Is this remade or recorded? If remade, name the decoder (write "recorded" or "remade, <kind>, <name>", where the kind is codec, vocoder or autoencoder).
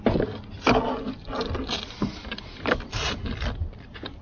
recorded